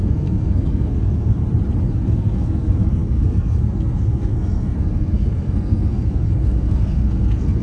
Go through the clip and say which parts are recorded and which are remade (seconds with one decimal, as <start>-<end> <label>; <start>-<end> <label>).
0.0-1.4 remade; 1.4-1.9 recorded; 1.9-7.6 remade